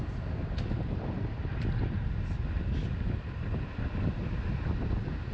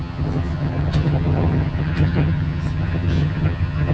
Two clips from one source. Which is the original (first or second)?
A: first